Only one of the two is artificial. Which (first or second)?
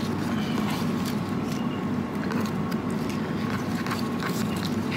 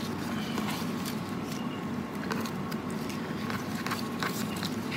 second